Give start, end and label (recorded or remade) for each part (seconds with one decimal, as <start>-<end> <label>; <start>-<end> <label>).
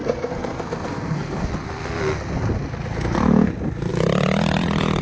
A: 0.0-1.5 remade; 1.5-5.0 recorded